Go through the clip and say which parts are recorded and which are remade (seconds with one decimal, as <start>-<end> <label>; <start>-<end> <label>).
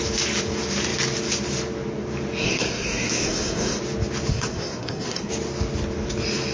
0.0-2.4 recorded; 2.4-3.8 remade; 3.8-4.3 recorded; 4.3-5.3 remade; 5.3-6.5 recorded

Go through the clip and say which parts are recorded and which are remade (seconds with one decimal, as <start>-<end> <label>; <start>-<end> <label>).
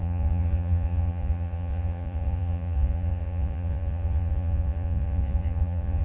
0.0-6.0 remade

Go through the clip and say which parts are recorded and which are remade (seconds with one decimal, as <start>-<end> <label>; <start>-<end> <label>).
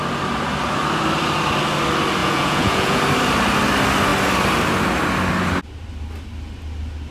0.0-2.2 recorded; 2.2-3.0 remade; 3.0-7.1 recorded